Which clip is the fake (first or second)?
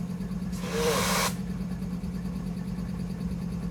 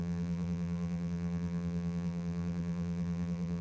second